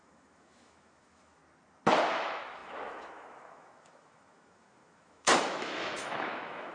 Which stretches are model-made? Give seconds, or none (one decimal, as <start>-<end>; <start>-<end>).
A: 0.0-1.4; 2.2-6.7